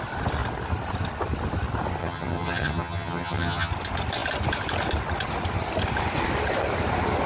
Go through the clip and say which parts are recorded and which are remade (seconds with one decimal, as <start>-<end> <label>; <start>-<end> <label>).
0.0-2.0 recorded; 2.0-3.7 remade; 3.7-7.3 recorded